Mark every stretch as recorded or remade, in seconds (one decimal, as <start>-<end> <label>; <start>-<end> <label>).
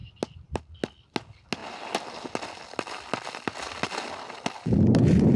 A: 0.0-5.4 recorded